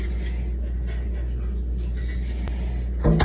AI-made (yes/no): no